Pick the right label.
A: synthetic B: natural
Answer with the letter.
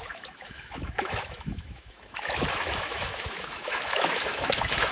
A